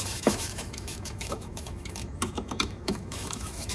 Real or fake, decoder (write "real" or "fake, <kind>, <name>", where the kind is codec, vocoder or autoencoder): fake, autoencoder, DAC-VAE